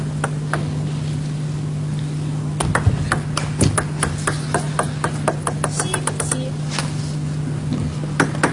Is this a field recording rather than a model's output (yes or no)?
yes